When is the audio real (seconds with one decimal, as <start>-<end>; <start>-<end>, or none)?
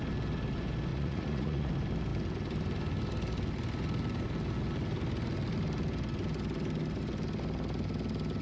0.0-0.9; 1.7-8.4